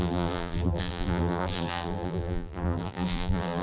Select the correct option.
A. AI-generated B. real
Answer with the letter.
A